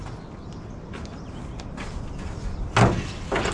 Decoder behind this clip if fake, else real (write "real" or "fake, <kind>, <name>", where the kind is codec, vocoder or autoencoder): real